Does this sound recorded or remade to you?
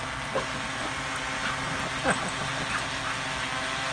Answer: recorded